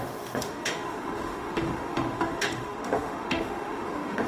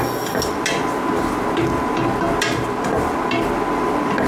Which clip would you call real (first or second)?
second